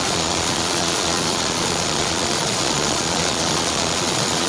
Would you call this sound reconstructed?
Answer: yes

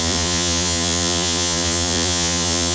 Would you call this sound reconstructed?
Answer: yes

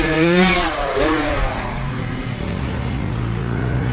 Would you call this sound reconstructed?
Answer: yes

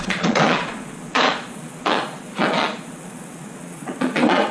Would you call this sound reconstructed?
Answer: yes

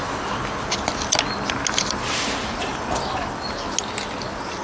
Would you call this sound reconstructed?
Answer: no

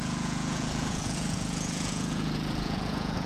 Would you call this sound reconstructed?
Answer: yes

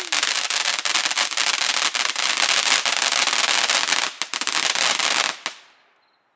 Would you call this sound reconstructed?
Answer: no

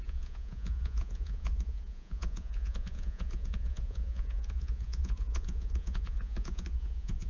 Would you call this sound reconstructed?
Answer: yes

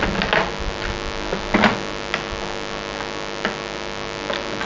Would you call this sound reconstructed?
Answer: no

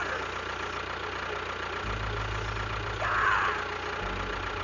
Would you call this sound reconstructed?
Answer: no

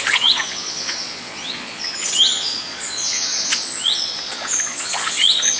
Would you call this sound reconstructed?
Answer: yes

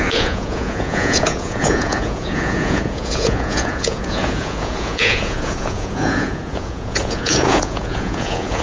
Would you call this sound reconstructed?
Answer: yes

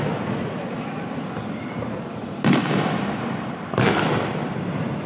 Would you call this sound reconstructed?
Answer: no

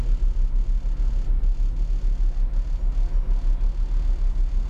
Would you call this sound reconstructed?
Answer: no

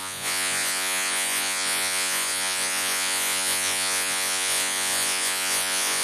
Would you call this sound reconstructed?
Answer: yes